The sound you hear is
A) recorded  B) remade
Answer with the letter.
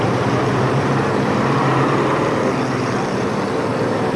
B